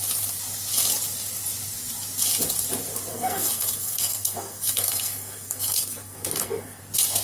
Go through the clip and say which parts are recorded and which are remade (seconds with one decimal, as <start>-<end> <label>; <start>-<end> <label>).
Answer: 0.0-3.1 recorded; 3.1-6.8 remade; 6.8-7.2 recorded